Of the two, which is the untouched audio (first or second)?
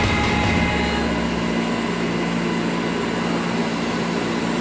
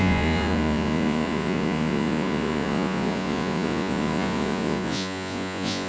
first